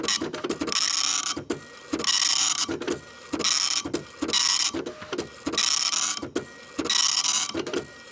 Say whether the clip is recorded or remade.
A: recorded